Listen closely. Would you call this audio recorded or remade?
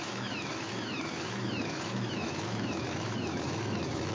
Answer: remade